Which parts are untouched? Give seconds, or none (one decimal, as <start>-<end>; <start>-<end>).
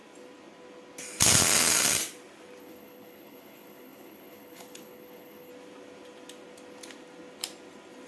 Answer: 0.0-2.6; 5.5-8.1